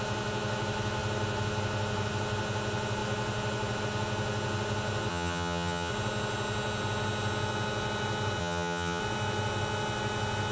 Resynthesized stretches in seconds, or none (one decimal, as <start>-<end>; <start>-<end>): 5.1-5.9; 8.4-9.0